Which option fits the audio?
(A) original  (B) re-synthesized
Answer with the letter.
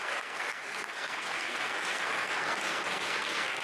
B